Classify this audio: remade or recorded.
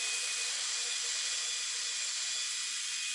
recorded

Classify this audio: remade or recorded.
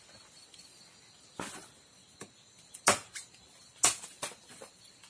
recorded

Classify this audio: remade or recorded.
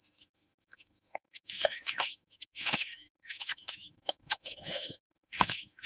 remade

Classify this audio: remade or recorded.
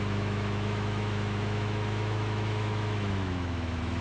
remade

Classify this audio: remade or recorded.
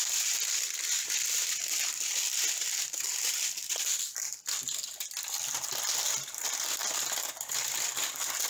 recorded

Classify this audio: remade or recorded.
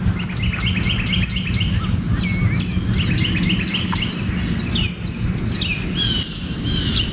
recorded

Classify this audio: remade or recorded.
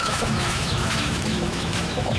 remade